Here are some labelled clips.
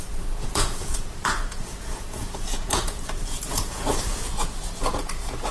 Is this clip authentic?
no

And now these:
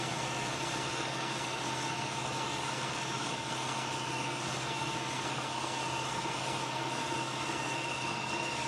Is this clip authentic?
no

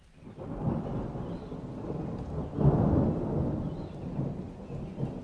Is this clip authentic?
yes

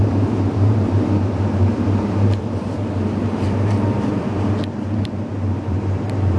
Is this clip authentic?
no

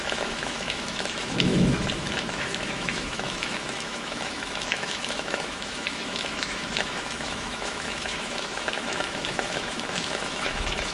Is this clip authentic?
no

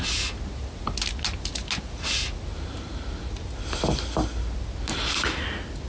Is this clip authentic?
yes